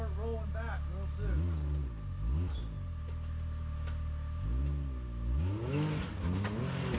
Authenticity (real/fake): real